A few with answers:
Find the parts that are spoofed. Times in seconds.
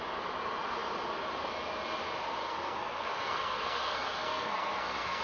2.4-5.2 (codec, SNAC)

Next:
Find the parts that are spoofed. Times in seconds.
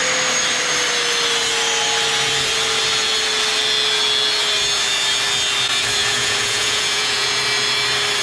6.0-7.4 (vocoder, Vocos)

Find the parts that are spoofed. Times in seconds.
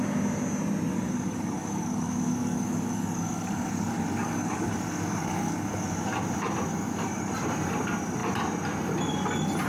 0.9-6.1 (codec, DAC); 6.7-7.3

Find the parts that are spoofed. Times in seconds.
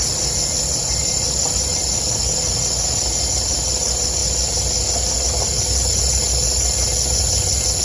1.0-1.7 (vocoder, BigVGAN v2)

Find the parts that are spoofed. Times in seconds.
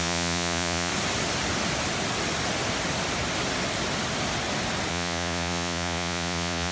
0.0-0.9 (vocoder, Vocos); 4.9-6.7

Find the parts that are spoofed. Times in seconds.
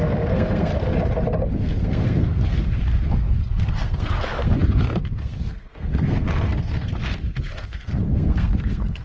0.0-0.7 (codec, SNAC); 1.5-9.0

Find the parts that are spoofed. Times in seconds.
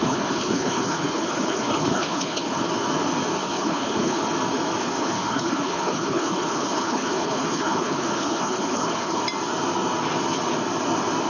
0.0-2.7 (codec, HILCodec); 3.4-4.2; 4.8-9.2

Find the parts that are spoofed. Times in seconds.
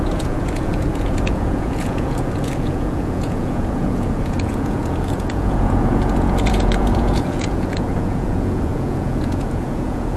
0.0-10.2 (vocoder, Vocos)